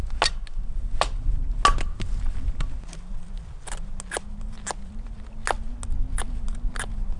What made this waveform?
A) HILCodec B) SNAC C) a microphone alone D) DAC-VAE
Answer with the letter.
C